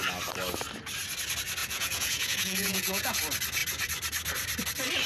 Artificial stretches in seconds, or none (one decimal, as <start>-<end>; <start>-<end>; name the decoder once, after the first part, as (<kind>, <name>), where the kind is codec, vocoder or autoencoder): 1.6-3.2 (vocoder, Vocos)